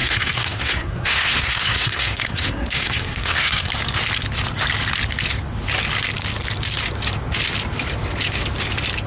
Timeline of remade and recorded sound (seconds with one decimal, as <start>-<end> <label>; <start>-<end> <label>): 0.0-3.7 remade; 3.7-9.1 recorded